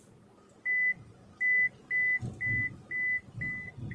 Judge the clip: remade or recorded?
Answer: recorded